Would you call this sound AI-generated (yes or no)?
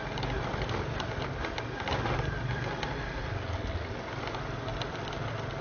no